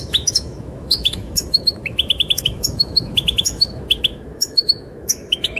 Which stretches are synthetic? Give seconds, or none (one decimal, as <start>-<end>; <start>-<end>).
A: 0.0-5.6